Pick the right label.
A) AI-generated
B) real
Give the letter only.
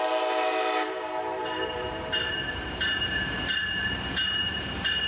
A